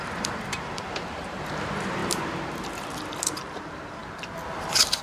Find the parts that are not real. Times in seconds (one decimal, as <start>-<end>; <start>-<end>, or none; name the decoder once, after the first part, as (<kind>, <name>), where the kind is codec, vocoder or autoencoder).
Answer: 0.0-2.0 (vocoder, BigVGAN v2); 3.5-4.0; 4.6-5.0